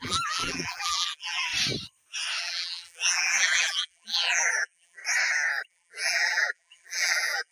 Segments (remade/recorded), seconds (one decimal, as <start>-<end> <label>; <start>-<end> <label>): 0.0-1.5 remade; 1.5-2.4 recorded; 2.4-5.0 remade; 5.0-5.7 recorded; 5.7-7.5 remade